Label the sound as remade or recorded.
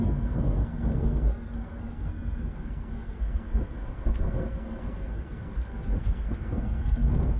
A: remade